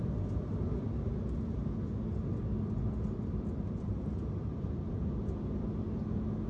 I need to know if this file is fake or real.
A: real